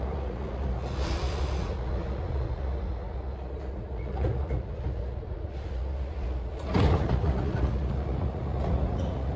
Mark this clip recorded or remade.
remade